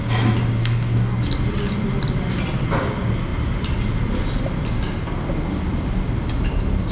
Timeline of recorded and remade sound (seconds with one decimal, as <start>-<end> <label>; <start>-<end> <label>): 0.0-0.6 recorded; 0.6-1.2 remade; 1.2-6.9 recorded